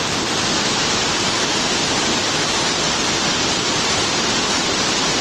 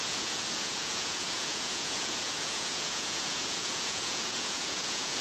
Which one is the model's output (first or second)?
second